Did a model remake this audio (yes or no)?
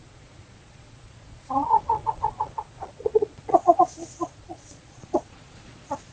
yes